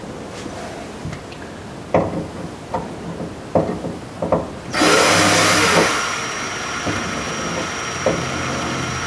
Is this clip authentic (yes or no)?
yes